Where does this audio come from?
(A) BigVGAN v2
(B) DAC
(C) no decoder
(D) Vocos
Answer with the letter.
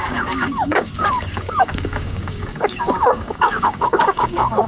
B